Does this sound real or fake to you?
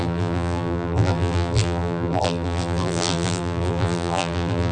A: fake